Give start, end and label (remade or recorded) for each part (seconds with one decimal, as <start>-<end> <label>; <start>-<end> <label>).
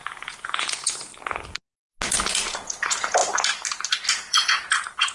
0.0-1.1 remade; 1.1-2.5 recorded; 2.5-3.2 remade; 3.2-4.1 recorded; 4.1-5.1 remade